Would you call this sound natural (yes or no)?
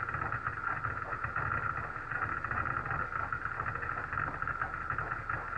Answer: yes